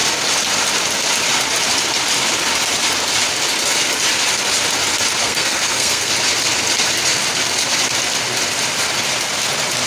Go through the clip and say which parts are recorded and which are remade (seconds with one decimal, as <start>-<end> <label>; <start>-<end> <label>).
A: 0.0-5.2 recorded; 5.2-6.1 remade; 6.1-9.9 recorded